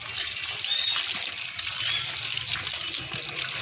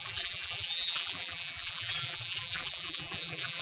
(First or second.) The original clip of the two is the first